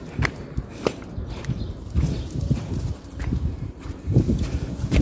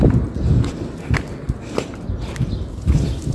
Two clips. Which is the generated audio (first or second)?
first